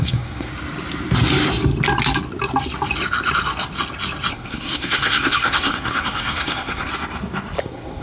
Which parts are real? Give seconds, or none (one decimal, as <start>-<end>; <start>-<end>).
0.5-4.3; 6.9-7.6